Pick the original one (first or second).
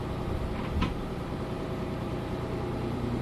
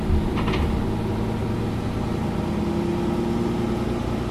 second